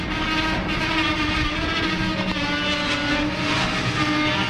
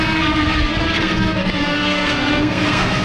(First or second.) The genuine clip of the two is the first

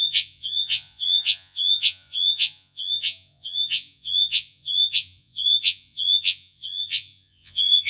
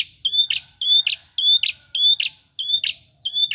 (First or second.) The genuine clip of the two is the second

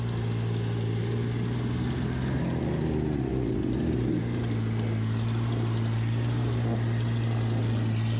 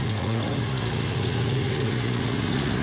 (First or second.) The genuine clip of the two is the first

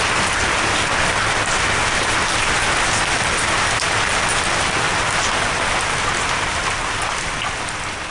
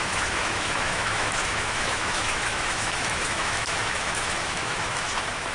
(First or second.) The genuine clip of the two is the first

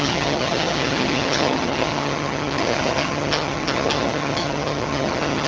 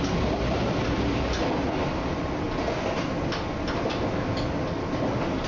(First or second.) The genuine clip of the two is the second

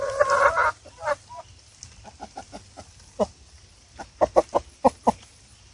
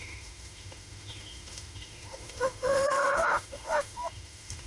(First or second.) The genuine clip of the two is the first